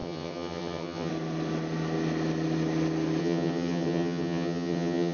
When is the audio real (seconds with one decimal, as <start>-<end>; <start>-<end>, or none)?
1.1-3.2